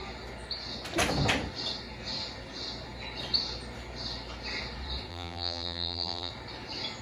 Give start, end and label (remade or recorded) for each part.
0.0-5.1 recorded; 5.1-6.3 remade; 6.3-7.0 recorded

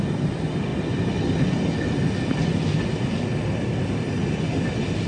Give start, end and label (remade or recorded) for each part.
0.0-5.1 recorded